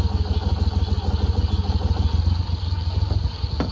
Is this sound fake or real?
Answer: real